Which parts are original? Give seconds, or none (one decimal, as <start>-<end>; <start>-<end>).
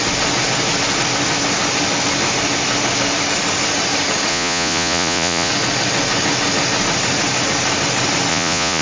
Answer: 0.0-4.3; 5.5-8.3